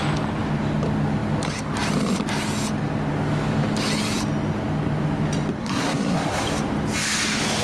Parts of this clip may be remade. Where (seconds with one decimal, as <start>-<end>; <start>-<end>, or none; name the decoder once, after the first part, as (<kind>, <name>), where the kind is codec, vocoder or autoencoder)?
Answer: 5.6-6.4 (codec, SNAC)